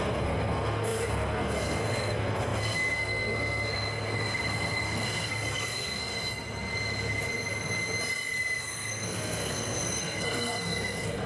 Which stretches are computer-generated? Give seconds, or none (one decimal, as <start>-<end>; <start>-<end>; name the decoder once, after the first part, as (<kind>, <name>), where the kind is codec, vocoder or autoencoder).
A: 0.0-6.1 (codec, SNAC); 8.6-11.3